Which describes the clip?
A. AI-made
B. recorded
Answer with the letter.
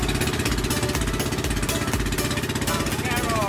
B